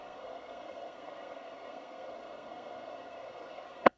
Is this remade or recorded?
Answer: remade